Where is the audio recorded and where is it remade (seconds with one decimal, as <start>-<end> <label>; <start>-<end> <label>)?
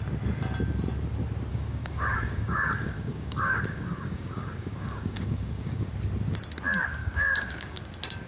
0.0-1.5 recorded; 1.5-5.9 remade; 5.9-7.0 recorded; 7.0-7.8 remade; 7.8-8.3 recorded